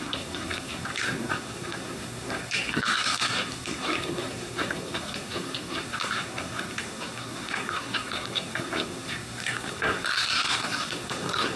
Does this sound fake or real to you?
fake